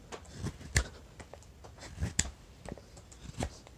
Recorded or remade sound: recorded